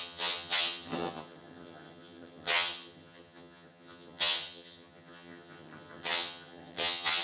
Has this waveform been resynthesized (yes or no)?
yes